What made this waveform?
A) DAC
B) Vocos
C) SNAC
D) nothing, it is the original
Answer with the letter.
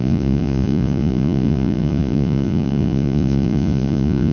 B